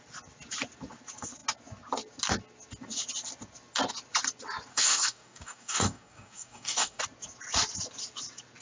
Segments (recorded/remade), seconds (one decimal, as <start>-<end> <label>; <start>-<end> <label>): 0.0-4.7 recorded; 4.7-7.0 remade; 7.0-8.6 recorded

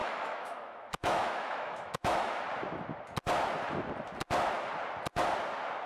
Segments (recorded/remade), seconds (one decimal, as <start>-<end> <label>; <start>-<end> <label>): 0.0-2.4 remade; 2.4-5.9 recorded

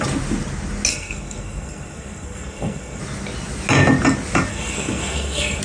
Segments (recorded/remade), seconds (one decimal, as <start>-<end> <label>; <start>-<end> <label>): 0.0-0.9 recorded; 0.9-3.0 remade; 3.0-4.5 recorded; 4.5-5.6 remade

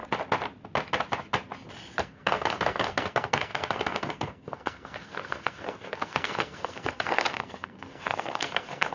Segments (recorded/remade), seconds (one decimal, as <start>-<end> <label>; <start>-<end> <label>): 0.0-2.0 recorded; 2.0-8.9 remade